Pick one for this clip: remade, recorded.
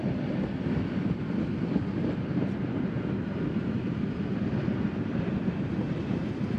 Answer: recorded